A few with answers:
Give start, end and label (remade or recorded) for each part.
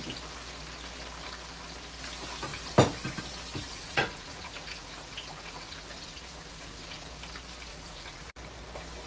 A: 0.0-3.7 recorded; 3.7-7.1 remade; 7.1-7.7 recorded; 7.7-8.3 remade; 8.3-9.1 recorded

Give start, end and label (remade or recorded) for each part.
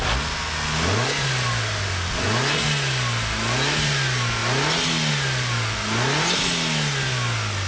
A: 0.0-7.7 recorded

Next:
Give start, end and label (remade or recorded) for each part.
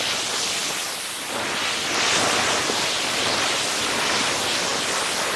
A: 0.0-5.4 recorded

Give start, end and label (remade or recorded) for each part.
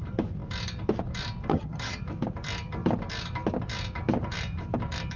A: 0.0-1.5 recorded; 1.5-2.0 remade; 2.0-5.2 recorded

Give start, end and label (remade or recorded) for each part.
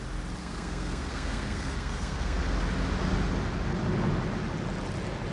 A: 0.0-0.4 recorded; 0.4-2.4 remade; 2.4-5.3 recorded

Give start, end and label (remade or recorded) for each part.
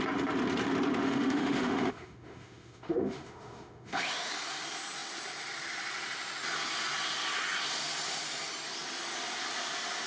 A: 0.0-1.0 recorded; 1.0-4.3 remade; 4.3-10.1 recorded